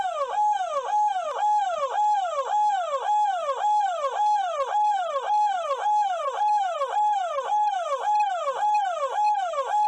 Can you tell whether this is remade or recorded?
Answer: recorded